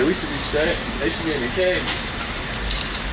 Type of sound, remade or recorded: recorded